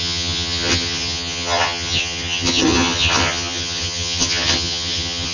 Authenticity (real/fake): fake